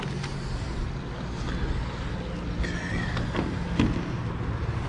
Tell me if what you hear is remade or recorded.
recorded